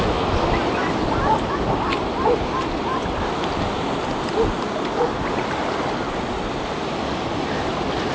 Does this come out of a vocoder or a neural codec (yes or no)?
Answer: no